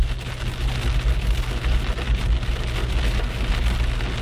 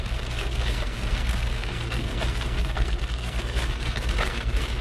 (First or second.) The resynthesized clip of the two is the second